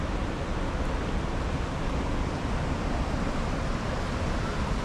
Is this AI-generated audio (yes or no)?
no